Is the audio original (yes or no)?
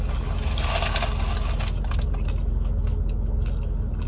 yes